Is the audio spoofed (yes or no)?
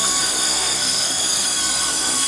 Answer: yes